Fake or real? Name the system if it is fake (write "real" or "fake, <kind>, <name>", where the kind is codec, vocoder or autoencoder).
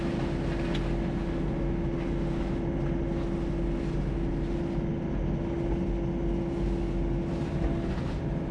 real